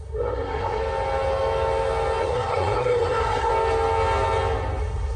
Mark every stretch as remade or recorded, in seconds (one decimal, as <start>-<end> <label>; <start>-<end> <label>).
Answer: 0.0-0.8 remade; 0.8-2.2 recorded; 2.2-3.5 remade; 3.5-4.8 recorded; 4.8-5.2 remade

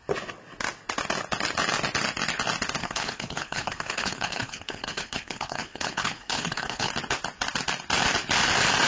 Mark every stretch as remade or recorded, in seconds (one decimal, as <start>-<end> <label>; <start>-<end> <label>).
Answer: 0.0-2.8 recorded; 2.8-6.9 remade; 6.9-8.9 recorded

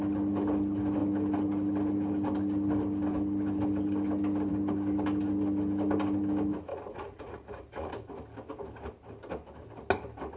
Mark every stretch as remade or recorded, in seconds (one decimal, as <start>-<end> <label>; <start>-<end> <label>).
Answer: 0.0-6.7 recorded; 6.7-7.9 remade; 7.9-10.4 recorded

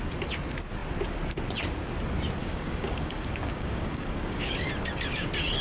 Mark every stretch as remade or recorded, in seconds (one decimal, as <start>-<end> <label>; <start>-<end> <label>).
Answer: 0.0-2.4 recorded; 2.4-4.7 remade; 4.7-5.6 recorded

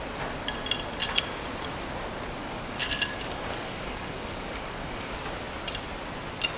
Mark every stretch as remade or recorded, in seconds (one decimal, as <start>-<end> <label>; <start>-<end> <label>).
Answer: 0.0-2.4 recorded; 2.4-5.2 remade; 5.2-6.6 recorded

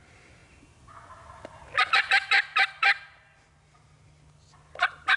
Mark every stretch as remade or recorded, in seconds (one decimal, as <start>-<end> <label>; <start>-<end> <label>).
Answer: 0.0-5.2 recorded